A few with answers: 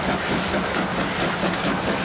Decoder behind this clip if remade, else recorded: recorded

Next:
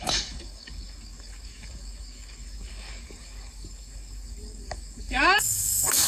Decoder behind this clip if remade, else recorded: remade, codec, DAC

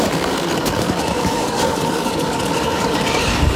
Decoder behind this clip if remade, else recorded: remade, codec, DAC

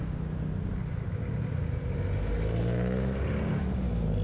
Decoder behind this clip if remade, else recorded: recorded